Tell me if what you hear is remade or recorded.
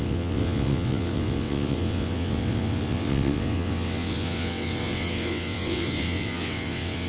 remade